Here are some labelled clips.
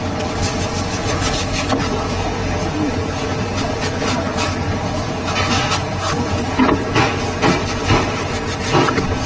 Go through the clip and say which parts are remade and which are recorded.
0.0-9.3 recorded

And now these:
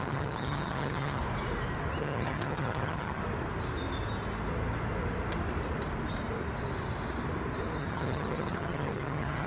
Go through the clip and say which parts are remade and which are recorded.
0.0-1.2 remade; 1.2-2.0 recorded; 2.0-3.2 remade; 3.2-7.8 recorded; 7.8-9.5 remade

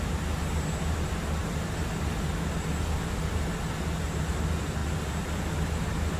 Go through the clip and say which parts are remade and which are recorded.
0.0-1.4 recorded; 1.4-2.3 remade; 2.3-6.2 recorded

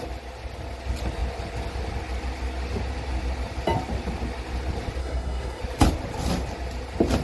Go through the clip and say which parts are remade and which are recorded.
0.0-5.0 recorded; 5.0-5.6 remade; 5.6-7.2 recorded

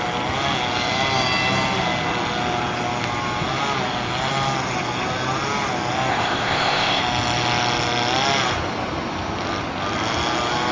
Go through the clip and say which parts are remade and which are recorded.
0.0-6.1 recorded; 6.1-7.0 remade; 7.0-10.7 recorded

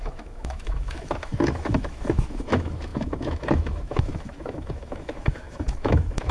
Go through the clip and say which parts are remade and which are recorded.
0.0-6.3 remade